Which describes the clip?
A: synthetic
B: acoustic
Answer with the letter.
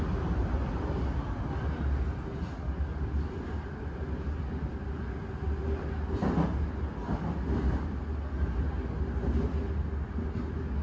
B